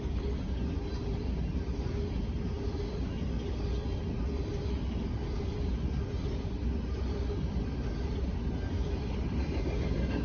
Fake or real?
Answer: real